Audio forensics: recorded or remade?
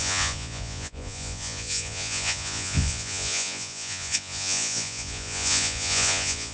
remade